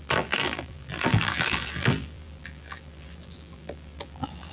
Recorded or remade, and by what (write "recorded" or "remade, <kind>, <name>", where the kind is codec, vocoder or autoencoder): remade, vocoder, BigVGAN v2